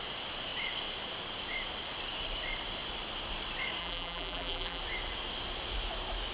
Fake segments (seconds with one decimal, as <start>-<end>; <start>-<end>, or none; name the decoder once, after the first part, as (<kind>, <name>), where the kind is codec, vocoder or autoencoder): 3.8-4.8 (vocoder, BigVGAN v2)